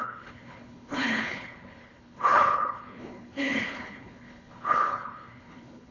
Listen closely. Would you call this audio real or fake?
fake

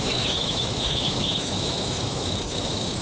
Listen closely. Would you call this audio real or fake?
fake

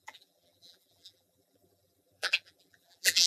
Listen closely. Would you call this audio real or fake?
fake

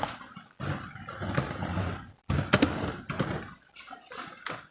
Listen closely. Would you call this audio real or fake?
real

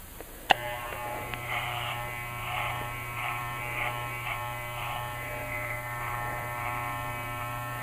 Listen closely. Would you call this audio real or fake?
fake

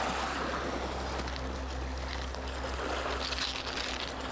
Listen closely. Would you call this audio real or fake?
real